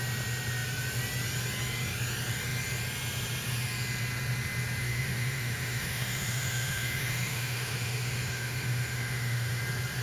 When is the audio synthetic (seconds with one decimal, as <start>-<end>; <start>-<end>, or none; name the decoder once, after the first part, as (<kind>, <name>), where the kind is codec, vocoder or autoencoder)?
4.8-9.6 (autoencoder, DAC-VAE)